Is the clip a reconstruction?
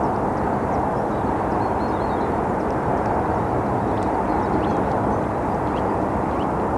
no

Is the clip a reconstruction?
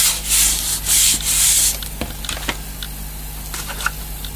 no